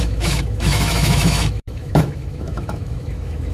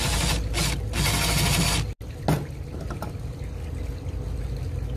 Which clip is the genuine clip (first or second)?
second